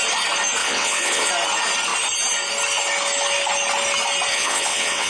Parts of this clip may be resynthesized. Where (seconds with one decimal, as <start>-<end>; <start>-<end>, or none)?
0.6-1.3; 4.3-5.1